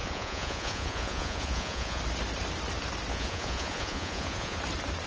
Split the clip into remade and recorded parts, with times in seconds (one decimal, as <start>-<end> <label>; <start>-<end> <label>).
0.0-2.0 remade; 2.0-3.1 recorded; 3.1-4.6 remade; 4.6-5.1 recorded

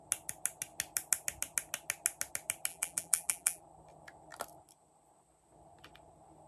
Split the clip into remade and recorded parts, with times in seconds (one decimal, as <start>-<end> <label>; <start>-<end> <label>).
0.0-2.7 recorded; 2.7-3.6 remade; 3.6-6.5 recorded

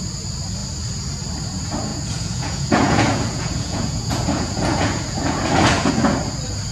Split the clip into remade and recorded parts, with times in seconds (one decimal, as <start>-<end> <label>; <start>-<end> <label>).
0.0-1.9 recorded; 1.9-5.9 remade; 5.9-6.7 recorded

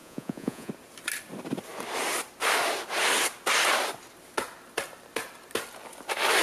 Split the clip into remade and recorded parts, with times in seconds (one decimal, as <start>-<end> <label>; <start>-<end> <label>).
0.0-0.7 remade; 0.7-6.4 recorded